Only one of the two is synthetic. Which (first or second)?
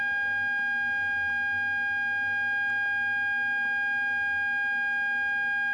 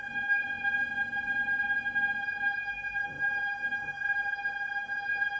second